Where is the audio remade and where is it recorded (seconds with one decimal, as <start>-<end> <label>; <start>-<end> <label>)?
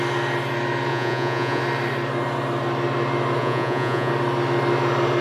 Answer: 0.0-0.9 recorded; 0.9-1.6 remade; 1.6-3.4 recorded; 3.4-4.1 remade; 4.1-5.2 recorded